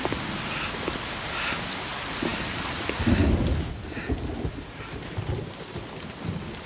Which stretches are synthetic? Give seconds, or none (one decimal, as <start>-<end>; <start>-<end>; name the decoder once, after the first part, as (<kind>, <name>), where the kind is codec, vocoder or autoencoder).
none